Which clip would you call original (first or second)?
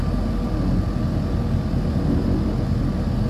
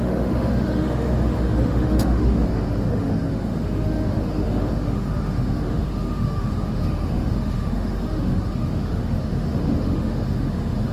first